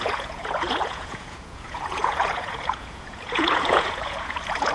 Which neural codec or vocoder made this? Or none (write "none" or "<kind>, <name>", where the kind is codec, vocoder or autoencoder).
vocoder, Vocos